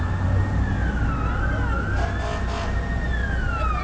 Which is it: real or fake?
real